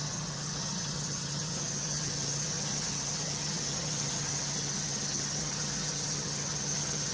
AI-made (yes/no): yes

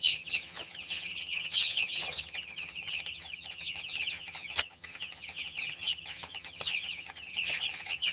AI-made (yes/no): yes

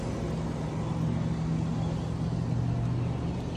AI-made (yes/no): no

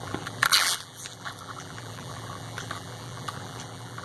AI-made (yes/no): yes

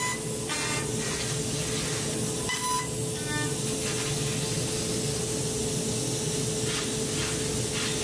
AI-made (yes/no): no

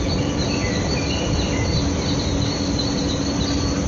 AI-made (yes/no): no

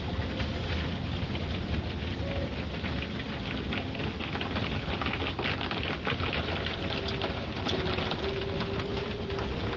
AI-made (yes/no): no